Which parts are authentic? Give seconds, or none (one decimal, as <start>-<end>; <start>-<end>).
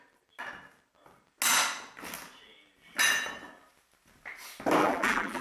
0.0-4.8